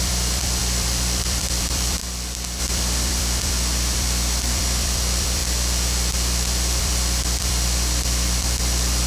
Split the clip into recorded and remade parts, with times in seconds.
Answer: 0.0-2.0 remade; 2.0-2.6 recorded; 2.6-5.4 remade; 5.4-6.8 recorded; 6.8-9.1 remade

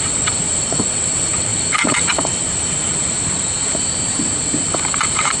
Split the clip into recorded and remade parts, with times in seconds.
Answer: 0.0-5.4 remade

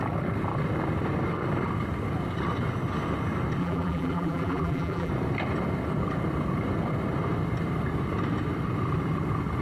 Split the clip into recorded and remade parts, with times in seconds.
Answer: 0.0-3.6 recorded; 3.6-5.1 remade; 5.1-9.6 recorded

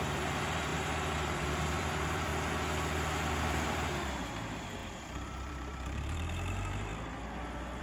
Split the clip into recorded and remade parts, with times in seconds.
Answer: 0.0-2.3 remade; 2.3-3.4 recorded; 3.4-6.9 remade; 6.9-7.8 recorded